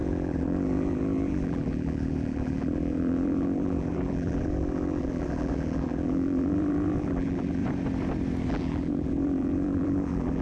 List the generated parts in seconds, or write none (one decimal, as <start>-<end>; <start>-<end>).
0.0-7.6; 8.5-10.4